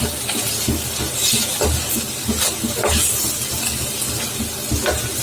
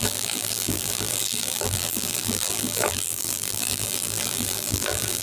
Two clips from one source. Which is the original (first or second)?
first